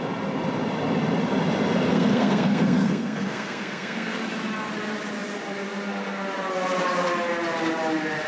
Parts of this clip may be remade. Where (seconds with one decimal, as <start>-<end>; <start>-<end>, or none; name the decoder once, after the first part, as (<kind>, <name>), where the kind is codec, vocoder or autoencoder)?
1.9-4.2 (codec, SNAC)